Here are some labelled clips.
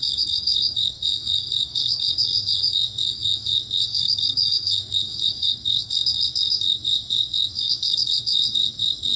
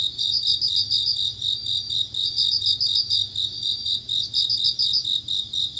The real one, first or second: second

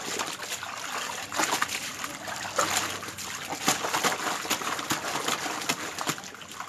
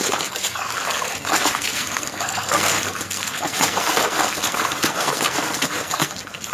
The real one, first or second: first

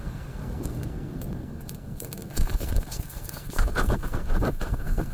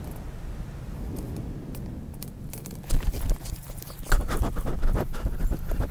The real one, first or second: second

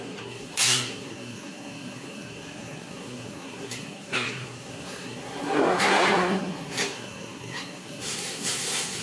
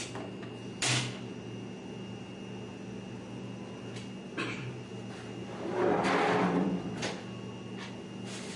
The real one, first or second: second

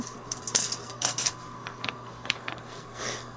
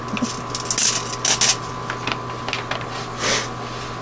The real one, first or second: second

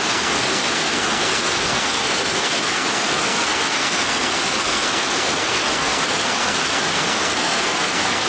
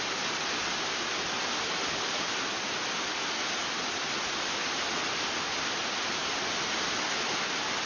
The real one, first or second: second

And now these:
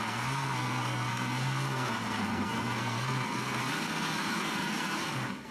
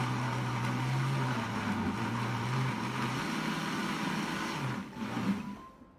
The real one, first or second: second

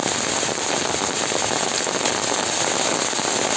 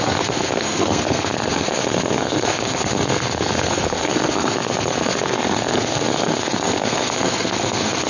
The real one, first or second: first